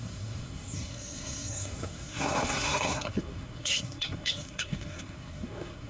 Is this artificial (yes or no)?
yes